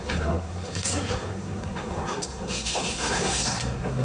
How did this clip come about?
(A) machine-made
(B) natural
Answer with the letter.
A